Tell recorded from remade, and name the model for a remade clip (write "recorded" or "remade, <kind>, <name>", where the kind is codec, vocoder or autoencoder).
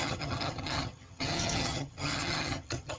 remade, vocoder, HiFi-GAN